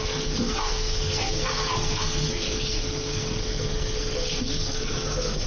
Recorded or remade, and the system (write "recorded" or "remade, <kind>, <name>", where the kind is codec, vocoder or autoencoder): remade, codec, SNAC